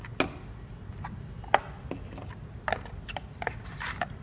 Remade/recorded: recorded